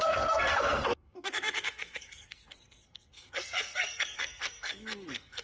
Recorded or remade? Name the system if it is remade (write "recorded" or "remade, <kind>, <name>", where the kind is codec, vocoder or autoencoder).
remade, codec, SNAC